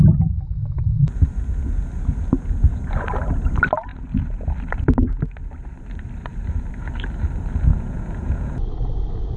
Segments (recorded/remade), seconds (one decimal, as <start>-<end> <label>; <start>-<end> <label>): 0.0-7.7 recorded; 7.7-8.6 remade; 8.6-9.4 recorded

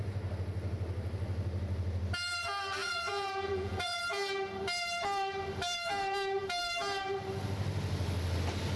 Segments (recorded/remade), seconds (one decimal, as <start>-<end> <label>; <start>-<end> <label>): 0.0-2.8 recorded; 2.8-4.0 remade; 4.0-8.8 recorded

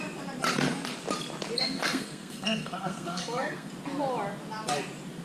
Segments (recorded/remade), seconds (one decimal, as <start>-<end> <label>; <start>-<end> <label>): 0.0-1.6 recorded; 1.6-3.7 remade; 3.7-5.2 recorded

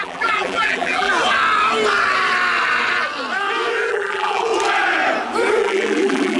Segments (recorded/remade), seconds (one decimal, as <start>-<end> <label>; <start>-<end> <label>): 0.0-1.1 remade; 1.1-3.9 recorded; 3.9-4.5 remade; 4.5-5.6 recorded; 5.6-6.4 remade

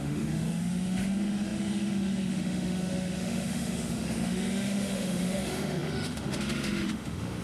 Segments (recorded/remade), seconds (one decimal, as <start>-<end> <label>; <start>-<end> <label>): 0.0-7.4 remade

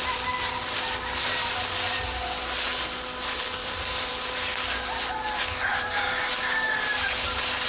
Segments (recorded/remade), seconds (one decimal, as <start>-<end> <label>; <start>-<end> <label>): 0.0-3.6 recorded; 3.6-4.1 remade; 4.1-5.7 recorded; 5.7-6.3 remade; 6.3-7.7 recorded

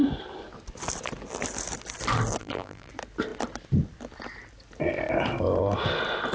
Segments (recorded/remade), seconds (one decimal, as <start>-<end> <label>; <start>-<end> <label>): 0.0-2.4 recorded; 2.4-2.9 remade; 2.9-6.3 recorded

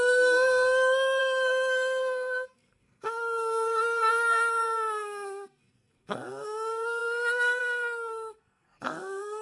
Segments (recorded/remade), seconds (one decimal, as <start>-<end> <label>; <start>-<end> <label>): 0.0-9.4 remade